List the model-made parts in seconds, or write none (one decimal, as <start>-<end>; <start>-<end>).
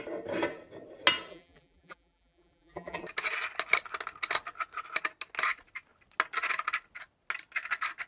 1.3-3.0